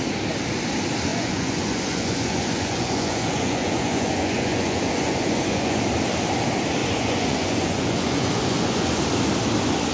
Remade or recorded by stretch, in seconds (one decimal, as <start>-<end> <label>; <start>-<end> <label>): 0.0-1.1 recorded; 1.1-5.8 remade; 5.8-6.8 recorded; 6.8-9.0 remade; 9.0-9.9 recorded